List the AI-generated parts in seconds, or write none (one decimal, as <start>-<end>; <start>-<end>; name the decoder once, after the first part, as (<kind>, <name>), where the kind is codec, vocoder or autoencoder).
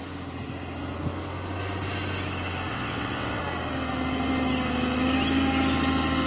2.7-3.4 (vocoder, WaveNeXt)